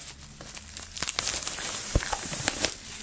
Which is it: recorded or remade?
recorded